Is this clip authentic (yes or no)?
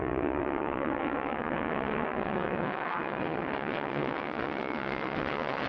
no